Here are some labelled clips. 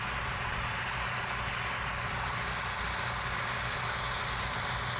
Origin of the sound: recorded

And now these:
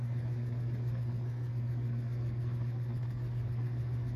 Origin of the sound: remade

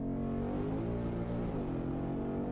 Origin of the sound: recorded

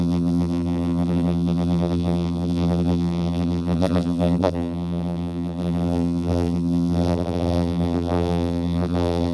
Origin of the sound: remade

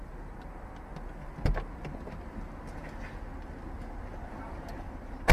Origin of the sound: recorded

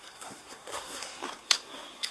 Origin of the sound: remade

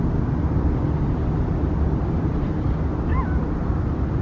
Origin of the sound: recorded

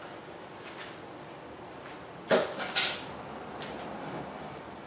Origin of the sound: recorded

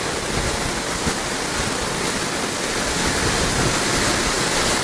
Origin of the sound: recorded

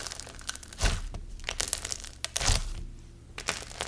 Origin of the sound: recorded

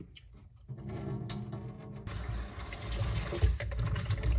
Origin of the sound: recorded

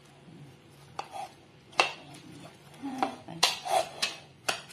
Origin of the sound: remade